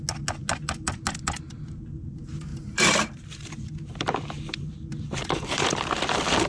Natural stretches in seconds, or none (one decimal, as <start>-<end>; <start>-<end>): 0.0-2.5